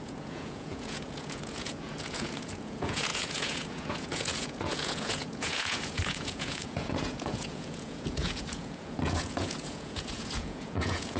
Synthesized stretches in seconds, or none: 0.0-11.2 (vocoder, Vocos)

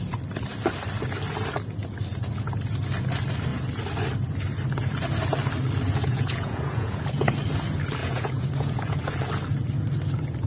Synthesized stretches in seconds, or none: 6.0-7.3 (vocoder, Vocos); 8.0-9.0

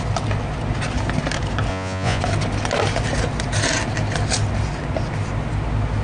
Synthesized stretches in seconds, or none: 1.7-2.2 (vocoder, Vocos)

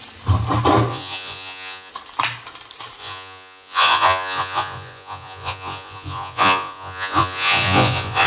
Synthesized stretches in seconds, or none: 0.9-1.9 (vocoder, Vocos); 3.0-8.3